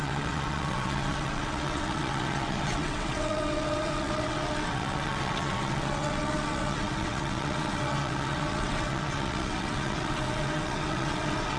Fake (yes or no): yes